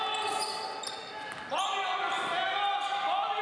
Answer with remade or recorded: recorded